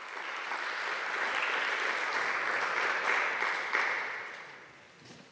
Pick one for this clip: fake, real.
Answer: real